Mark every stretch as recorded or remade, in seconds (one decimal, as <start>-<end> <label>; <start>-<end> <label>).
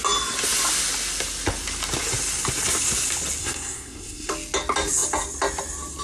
0.0-3.4 recorded; 3.4-4.3 remade; 4.3-6.0 recorded